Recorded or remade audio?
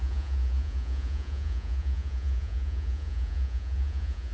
remade